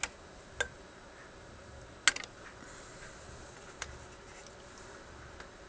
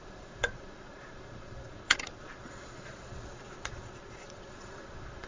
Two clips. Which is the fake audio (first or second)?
second